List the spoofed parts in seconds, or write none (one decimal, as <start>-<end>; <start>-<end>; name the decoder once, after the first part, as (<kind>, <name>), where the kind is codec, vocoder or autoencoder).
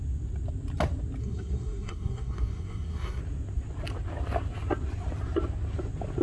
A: 1.2-3.2 (codec, SNAC)